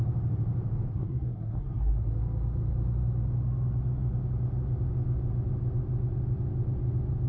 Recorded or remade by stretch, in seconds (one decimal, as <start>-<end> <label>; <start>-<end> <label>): 0.0-0.9 recorded; 0.9-2.1 remade; 2.1-7.3 recorded

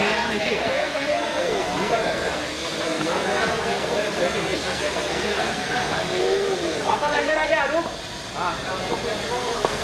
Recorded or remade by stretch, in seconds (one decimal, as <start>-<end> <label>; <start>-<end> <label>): 0.0-7.5 remade; 7.5-9.3 recorded; 9.3-9.8 remade

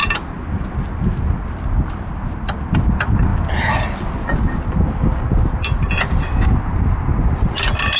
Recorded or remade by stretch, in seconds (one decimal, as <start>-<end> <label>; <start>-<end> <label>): 0.0-8.0 recorded

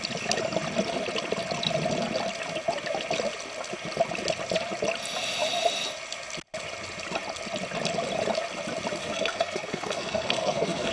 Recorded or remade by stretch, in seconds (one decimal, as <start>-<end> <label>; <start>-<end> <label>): 0.0-9.0 recorded; 9.0-10.9 remade